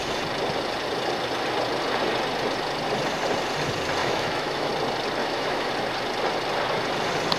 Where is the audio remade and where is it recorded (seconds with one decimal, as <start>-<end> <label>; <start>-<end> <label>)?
0.0-4.0 recorded; 4.0-4.7 remade; 4.7-5.2 recorded; 5.2-5.7 remade; 5.7-7.4 recorded